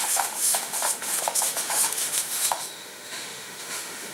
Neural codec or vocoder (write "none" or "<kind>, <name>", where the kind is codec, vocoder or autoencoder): autoencoder, DAC-VAE